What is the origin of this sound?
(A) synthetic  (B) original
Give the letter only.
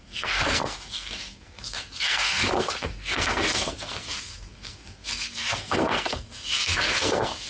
A